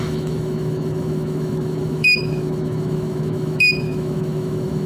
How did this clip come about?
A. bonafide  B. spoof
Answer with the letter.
B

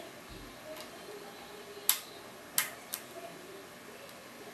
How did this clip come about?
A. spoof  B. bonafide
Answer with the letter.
B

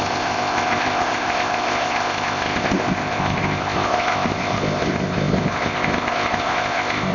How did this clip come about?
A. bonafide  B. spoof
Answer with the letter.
B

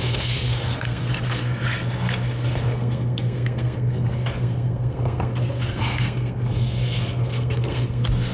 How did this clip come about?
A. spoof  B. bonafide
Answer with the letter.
A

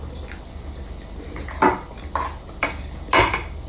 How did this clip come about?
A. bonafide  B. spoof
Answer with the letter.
A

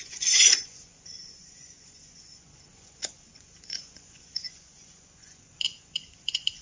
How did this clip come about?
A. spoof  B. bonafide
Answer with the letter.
A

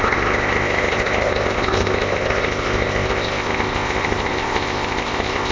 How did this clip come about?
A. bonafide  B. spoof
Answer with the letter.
B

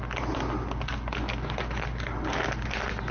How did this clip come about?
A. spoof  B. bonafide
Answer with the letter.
B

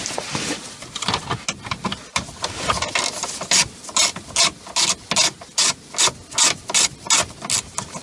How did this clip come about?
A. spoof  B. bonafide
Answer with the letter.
B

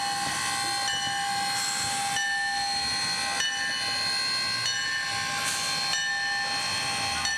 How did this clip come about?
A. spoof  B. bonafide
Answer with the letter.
B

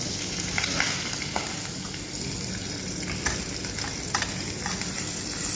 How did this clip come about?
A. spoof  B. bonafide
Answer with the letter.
B